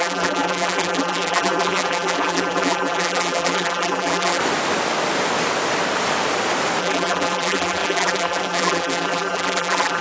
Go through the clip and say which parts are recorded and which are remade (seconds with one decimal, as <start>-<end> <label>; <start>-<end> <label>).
0.0-4.4 remade; 4.4-6.8 recorded; 6.8-10.0 remade